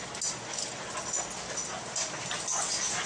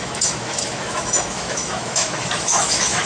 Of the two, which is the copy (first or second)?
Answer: second